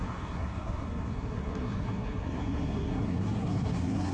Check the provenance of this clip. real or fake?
fake